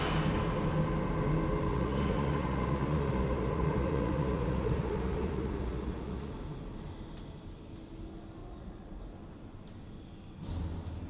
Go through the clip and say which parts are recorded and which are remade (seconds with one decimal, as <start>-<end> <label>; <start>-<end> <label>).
0.0-1.7 recorded; 1.7-6.3 remade; 6.3-8.4 recorded; 8.4-9.0 remade; 9.0-11.1 recorded